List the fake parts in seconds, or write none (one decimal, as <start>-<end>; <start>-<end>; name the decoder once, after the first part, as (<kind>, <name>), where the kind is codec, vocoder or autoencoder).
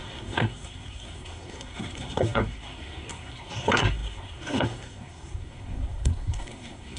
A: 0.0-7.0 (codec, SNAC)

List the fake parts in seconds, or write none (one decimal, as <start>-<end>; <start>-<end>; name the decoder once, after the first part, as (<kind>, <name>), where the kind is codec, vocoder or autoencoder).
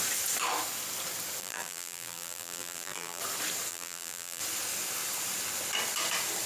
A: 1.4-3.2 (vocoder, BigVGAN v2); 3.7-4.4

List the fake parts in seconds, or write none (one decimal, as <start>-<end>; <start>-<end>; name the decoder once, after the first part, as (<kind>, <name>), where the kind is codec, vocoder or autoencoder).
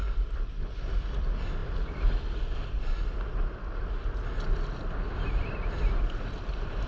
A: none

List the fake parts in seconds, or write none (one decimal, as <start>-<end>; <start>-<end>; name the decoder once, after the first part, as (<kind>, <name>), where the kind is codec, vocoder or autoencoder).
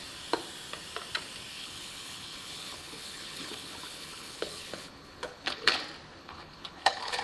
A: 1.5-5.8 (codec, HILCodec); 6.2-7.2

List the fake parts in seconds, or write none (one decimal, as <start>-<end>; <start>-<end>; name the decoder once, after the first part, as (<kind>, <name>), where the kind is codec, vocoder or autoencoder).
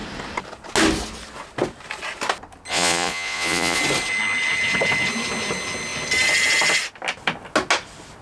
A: 2.7-3.8 (vocoder, Vocos)